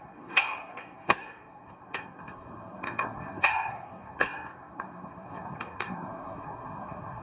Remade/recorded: remade